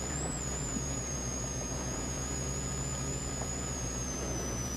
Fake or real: fake